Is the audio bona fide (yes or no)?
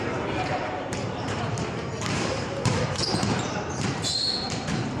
no